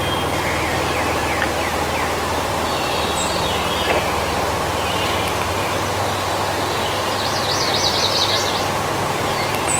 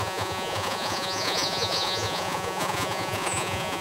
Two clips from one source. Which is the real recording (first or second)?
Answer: first